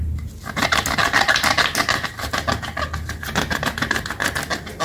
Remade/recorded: recorded